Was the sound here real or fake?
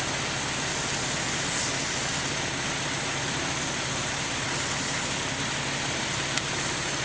real